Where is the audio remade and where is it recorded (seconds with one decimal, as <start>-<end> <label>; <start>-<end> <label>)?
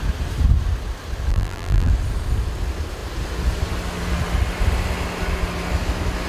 0.0-1.3 recorded; 1.3-1.9 remade; 1.9-6.3 recorded